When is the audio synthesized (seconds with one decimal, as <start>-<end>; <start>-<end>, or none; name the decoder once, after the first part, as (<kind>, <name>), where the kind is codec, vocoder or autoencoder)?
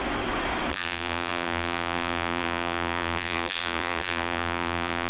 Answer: 0.7-5.1 (vocoder, BigVGAN v2)